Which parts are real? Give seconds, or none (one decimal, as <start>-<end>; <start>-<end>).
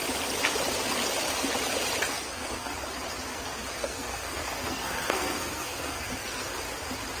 0.0-2.1; 2.7-3.3; 6.5-7.2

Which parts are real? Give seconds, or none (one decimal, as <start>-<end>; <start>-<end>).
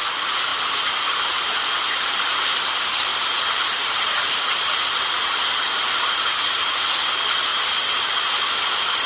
0.0-0.5; 1.2-3.1; 6.5-7.5; 8.2-9.1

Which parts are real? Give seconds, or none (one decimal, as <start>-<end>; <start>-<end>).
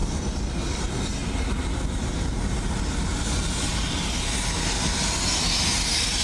1.2-4.9